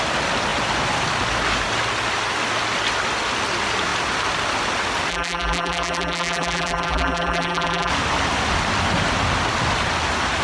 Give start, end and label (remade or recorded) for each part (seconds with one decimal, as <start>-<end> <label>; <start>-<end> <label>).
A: 0.0-5.1 recorded; 5.1-7.9 remade; 7.9-10.4 recorded

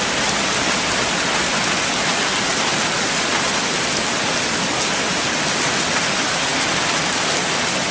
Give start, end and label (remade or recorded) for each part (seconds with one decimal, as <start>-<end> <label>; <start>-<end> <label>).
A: 0.0-1.5 remade; 1.5-6.1 recorded; 6.1-7.9 remade

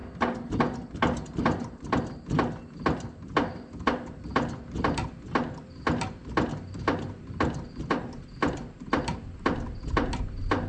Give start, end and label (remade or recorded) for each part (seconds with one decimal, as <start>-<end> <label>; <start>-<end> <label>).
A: 0.0-10.7 recorded

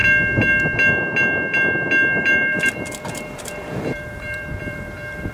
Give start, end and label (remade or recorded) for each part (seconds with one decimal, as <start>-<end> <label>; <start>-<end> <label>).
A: 0.0-2.2 recorded; 2.2-5.3 remade

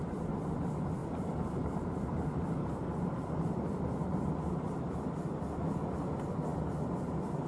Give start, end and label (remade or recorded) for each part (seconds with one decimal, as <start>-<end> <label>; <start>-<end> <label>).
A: 0.0-1.0 recorded; 1.0-3.8 remade; 3.8-7.5 recorded

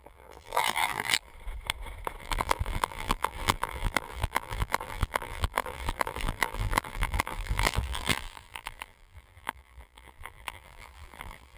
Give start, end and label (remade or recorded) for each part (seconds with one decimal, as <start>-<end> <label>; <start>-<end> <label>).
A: 0.0-1.3 remade; 1.3-2.2 recorded; 2.2-11.6 remade

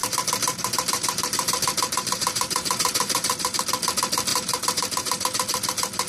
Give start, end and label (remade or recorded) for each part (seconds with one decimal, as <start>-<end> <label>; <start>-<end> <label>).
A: 0.0-3.6 remade; 3.6-4.3 recorded; 4.3-5.2 remade; 5.2-6.1 recorded